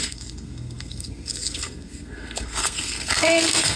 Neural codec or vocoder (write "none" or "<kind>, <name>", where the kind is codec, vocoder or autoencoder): codec, SNAC